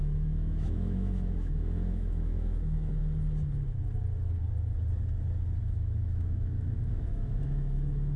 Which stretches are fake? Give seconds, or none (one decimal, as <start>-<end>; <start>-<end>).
0.0-3.0; 5.6-8.2